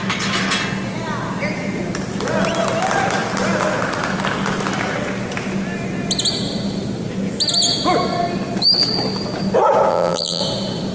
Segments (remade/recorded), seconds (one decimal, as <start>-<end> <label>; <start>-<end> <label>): 0.0-9.9 recorded; 9.9-10.4 remade; 10.4-10.9 recorded

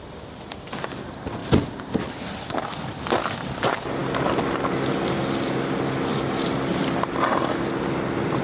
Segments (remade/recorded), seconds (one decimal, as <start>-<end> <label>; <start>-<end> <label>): 0.0-8.4 recorded

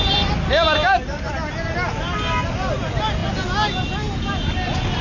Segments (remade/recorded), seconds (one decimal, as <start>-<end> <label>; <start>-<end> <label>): 0.0-5.0 recorded

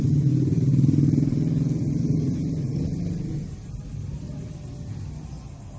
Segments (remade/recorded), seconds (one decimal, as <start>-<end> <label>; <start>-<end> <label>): 0.0-5.8 recorded